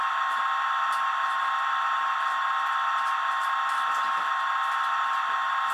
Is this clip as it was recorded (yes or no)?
yes